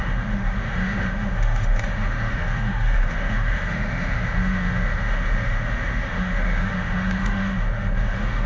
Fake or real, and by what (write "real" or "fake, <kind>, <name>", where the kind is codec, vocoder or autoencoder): fake, autoencoder, DAC-VAE